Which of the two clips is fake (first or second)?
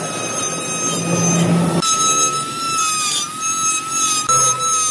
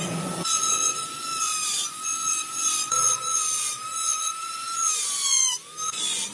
second